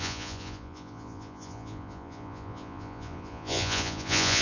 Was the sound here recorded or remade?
remade